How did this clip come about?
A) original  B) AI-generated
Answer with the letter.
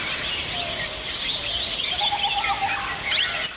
A